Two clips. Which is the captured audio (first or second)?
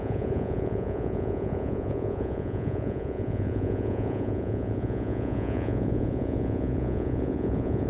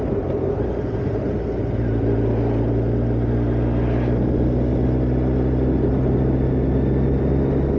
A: second